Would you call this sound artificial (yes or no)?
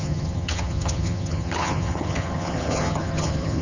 yes